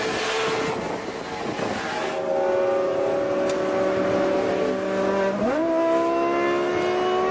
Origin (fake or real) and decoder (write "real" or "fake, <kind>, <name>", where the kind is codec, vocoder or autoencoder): real